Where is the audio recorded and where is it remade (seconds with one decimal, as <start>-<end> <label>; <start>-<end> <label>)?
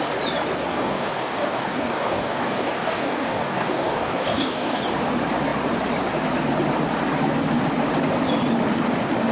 0.0-0.7 recorded; 0.7-4.8 remade; 4.8-9.3 recorded